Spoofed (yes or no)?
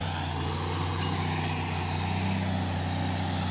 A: no